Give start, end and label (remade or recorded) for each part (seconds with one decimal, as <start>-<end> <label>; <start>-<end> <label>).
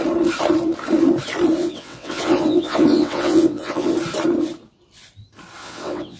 0.0-1.6 recorded; 1.6-3.9 remade; 3.9-5.6 recorded; 5.6-6.2 remade